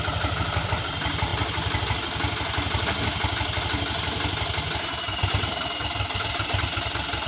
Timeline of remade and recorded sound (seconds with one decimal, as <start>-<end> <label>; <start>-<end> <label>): 0.0-1.3 remade; 1.3-5.3 recorded; 5.3-7.3 remade